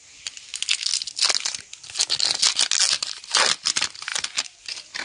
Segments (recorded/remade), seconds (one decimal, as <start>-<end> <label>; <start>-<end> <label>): 0.0-5.0 recorded